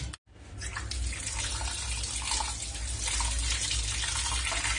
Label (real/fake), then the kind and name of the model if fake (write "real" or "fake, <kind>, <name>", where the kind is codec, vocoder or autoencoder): real